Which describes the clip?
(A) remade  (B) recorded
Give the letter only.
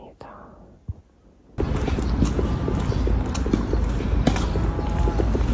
B